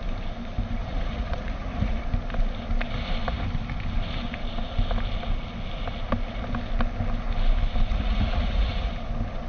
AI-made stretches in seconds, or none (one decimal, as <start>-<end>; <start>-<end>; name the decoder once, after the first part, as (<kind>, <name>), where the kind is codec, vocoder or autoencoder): 0.8-2.0 (vocoder, Vocos); 7.9-8.9